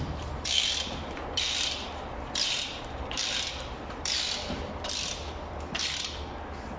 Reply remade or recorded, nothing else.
remade